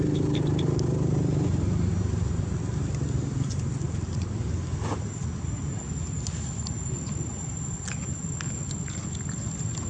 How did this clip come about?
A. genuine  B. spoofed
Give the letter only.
A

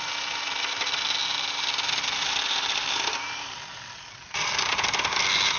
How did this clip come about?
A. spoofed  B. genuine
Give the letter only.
B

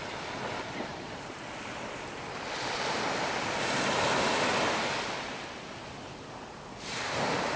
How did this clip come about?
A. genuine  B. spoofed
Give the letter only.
A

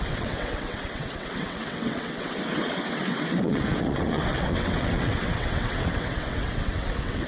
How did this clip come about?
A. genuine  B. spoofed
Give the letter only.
B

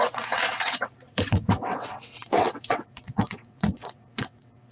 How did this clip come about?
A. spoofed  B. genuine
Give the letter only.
A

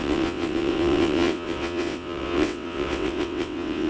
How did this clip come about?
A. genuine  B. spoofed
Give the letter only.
B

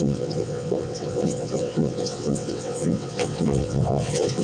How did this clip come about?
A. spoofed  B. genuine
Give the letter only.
A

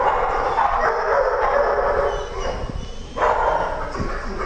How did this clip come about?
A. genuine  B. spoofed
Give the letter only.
A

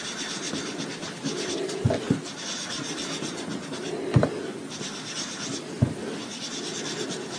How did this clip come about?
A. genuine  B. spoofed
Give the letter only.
A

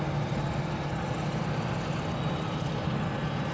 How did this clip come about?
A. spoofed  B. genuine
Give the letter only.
B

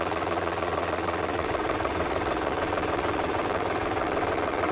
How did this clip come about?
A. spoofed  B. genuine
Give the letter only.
A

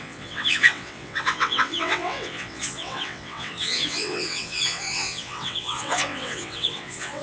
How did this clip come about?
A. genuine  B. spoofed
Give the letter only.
B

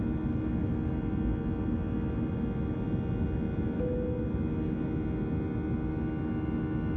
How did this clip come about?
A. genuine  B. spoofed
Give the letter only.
A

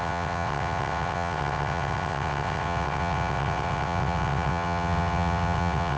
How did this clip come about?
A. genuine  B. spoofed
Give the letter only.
B